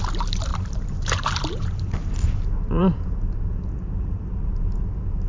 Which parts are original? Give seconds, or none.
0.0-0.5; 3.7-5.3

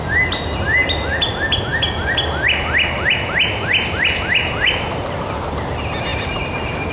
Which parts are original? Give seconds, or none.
0.0-6.9

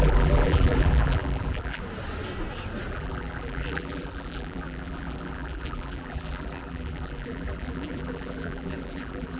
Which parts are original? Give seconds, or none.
1.8-2.9

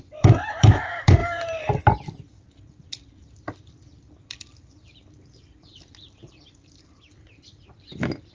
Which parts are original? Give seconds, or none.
none